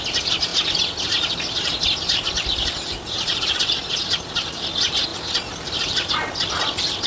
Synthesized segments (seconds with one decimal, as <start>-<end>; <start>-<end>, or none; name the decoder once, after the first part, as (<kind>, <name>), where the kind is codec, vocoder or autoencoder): none